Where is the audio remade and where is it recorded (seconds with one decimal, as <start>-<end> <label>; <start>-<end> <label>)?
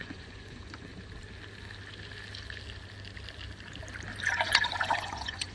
0.0-0.9 remade; 0.9-4.2 recorded; 4.2-5.5 remade